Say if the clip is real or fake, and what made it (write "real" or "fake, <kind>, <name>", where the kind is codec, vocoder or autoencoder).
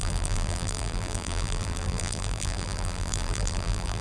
fake, vocoder, BigVGAN v2